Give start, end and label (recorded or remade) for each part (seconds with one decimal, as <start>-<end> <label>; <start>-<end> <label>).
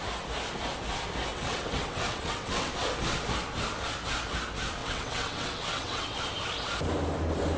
0.0-1.3 recorded; 1.3-2.7 remade; 2.7-4.8 recorded; 4.8-6.2 remade; 6.2-7.6 recorded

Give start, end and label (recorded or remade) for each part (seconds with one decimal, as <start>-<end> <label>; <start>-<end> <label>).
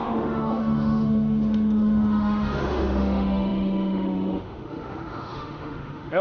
0.0-6.2 remade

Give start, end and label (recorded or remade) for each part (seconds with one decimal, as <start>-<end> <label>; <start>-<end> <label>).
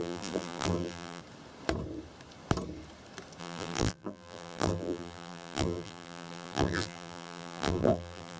0.0-1.2 remade; 1.2-3.4 recorded; 3.4-8.4 remade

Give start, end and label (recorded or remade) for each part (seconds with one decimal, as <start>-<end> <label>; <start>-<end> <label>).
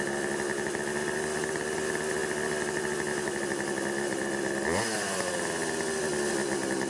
0.0-6.9 recorded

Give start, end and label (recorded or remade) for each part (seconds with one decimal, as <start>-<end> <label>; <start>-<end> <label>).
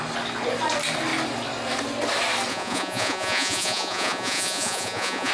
0.0-2.5 recorded; 2.5-5.3 remade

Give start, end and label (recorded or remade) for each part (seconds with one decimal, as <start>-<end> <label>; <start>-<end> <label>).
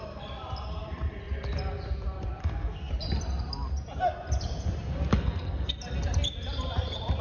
0.0-2.4 recorded; 2.4-2.9 remade; 2.9-5.1 recorded; 5.1-5.7 remade; 5.7-7.2 recorded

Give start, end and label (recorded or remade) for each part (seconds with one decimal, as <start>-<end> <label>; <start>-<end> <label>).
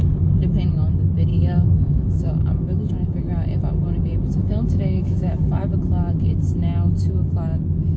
0.0-1.3 recorded; 1.3-2.9 remade; 2.9-4.4 recorded; 4.4-5.3 remade; 5.3-8.0 recorded